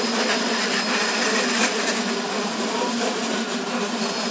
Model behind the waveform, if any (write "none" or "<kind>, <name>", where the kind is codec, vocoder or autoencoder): none